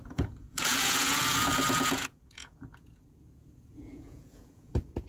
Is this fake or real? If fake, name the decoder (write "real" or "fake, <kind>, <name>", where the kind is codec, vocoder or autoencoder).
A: fake, vocoder, Vocos